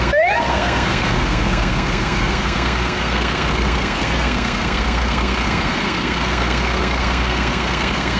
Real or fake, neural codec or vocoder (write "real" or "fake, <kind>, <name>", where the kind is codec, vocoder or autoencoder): fake, codec, SNAC